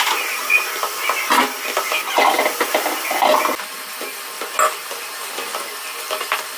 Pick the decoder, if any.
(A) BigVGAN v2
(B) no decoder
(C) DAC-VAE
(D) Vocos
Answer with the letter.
B